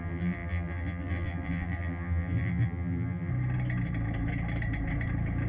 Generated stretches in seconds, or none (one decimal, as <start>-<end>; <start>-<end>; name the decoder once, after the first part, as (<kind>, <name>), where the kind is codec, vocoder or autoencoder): 0.0-3.3 (vocoder, BigVGAN v2)